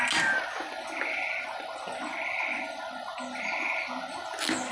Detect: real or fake real